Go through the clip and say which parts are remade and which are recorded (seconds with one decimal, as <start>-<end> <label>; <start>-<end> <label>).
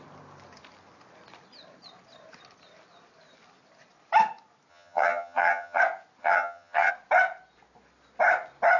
0.0-4.7 recorded; 4.7-5.8 remade; 5.8-6.2 recorded; 6.2-6.9 remade; 6.9-8.8 recorded